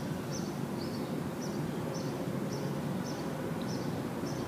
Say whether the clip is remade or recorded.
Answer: recorded